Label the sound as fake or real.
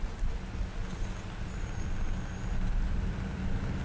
real